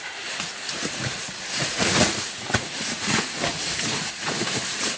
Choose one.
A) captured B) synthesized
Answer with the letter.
B